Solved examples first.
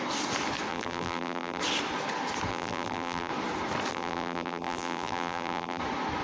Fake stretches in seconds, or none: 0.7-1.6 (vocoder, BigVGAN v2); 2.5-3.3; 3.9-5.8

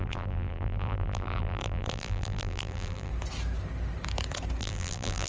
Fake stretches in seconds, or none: 0.0-3.1 (vocoder, BigVGAN v2); 4.6-5.3

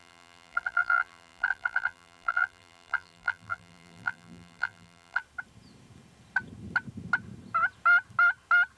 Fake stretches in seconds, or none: 0.0-5.2 (vocoder, BigVGAN v2)